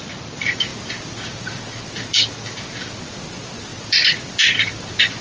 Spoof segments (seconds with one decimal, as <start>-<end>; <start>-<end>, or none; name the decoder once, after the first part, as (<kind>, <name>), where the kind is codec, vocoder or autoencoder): none